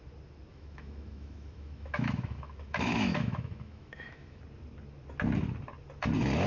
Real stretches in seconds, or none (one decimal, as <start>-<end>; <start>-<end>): 0.0-0.5; 4.4-6.5